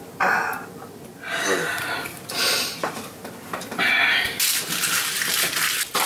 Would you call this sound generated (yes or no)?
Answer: yes